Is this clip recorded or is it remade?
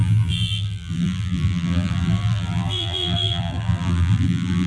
remade